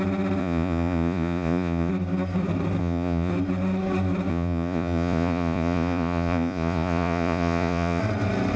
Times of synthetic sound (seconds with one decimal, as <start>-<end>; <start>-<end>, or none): 0.4-1.9; 2.8-3.3; 4.3-8.0

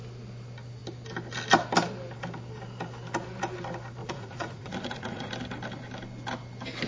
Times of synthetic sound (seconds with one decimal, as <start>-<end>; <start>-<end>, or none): 4.0-5.3

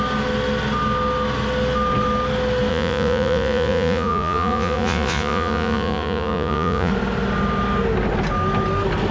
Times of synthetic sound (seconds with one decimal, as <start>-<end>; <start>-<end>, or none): 2.7-6.9

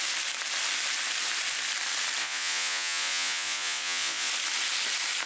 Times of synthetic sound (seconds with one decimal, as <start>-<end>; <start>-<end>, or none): 2.2-4.3

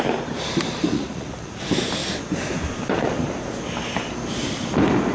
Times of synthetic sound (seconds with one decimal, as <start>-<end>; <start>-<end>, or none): 0.9-1.6